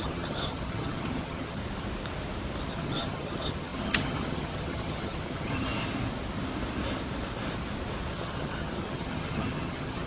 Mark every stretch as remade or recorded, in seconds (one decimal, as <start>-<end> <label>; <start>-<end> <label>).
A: 0.0-1.6 remade; 1.6-2.7 recorded; 2.7-5.8 remade; 5.8-8.1 recorded; 8.1-10.1 remade